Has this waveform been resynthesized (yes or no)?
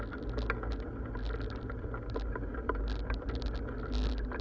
no